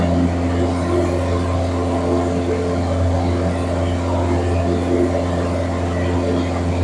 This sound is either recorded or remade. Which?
recorded